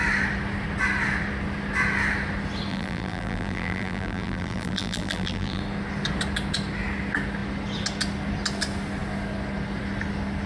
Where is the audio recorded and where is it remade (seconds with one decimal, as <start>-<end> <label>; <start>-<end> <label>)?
0.0-2.7 recorded; 2.7-5.6 remade; 5.6-10.5 recorded